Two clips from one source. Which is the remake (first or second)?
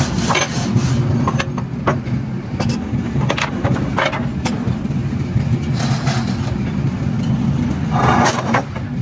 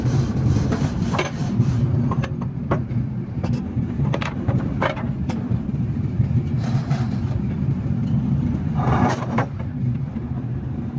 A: second